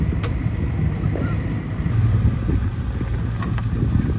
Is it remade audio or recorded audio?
recorded